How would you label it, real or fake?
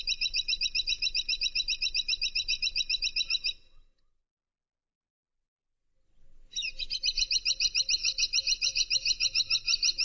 real